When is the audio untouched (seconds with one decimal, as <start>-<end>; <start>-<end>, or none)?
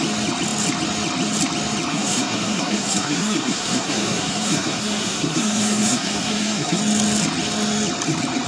0.0-1.9; 6.8-8.5